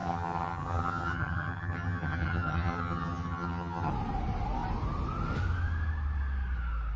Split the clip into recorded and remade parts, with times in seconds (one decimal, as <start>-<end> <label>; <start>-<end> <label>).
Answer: 0.0-3.9 remade; 3.9-7.0 recorded

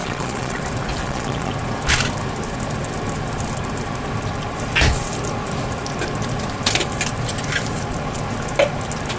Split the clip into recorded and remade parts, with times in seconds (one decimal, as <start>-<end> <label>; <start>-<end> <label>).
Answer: 0.0-0.6 remade; 0.6-1.0 recorded; 1.0-1.5 remade; 1.5-9.2 recorded

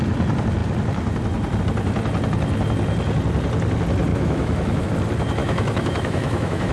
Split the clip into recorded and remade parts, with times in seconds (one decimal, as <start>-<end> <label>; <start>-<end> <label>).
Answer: 0.0-4.1 recorded; 4.1-4.9 remade; 4.9-5.4 recorded; 5.4-6.7 remade

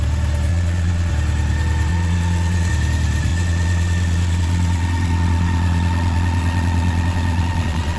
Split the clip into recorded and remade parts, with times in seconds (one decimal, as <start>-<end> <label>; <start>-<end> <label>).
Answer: 0.0-0.5 recorded; 0.5-1.1 remade; 1.1-1.9 recorded; 1.9-2.7 remade; 2.7-3.3 recorded; 3.3-8.0 remade

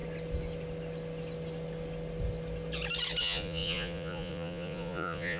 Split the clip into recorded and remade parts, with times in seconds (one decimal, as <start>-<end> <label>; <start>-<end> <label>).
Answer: 0.0-3.2 recorded; 3.2-5.4 remade